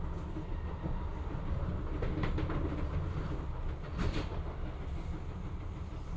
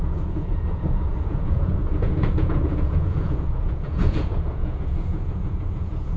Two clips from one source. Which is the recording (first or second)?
first